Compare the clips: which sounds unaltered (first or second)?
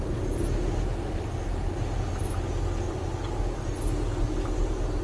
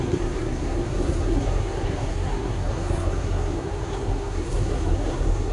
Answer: first